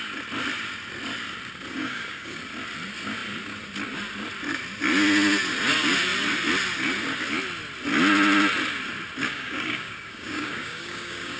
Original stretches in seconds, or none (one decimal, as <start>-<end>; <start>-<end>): 0.0-1.7; 2.4-9.2